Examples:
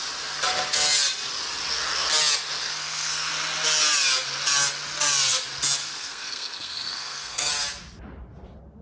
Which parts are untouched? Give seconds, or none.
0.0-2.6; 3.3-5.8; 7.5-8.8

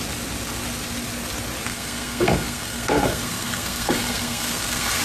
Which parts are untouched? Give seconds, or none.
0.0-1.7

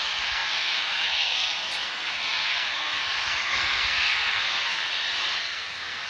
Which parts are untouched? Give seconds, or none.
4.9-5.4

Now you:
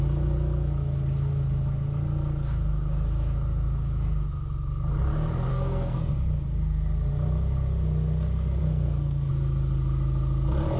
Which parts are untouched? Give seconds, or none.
0.0-5.5; 6.1-8.6; 9.3-10.8